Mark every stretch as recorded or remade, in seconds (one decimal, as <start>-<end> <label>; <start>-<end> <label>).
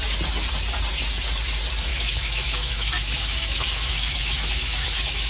0.0-1.9 recorded; 1.9-5.3 remade